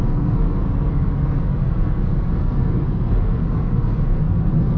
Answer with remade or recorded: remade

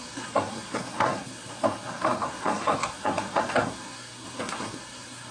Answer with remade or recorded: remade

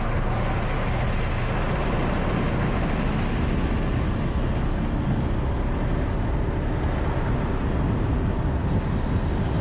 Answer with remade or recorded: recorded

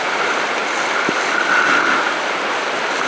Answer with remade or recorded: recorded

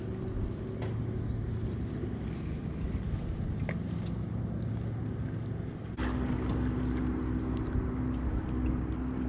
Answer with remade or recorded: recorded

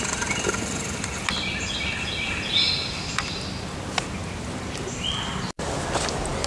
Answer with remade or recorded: recorded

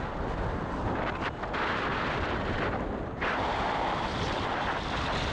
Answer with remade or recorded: recorded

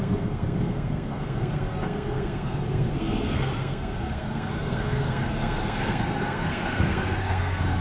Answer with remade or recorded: remade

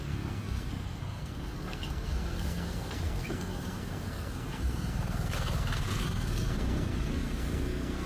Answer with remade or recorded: remade